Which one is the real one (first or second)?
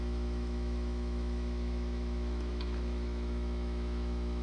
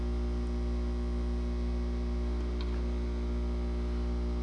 second